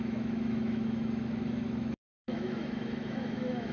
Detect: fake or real fake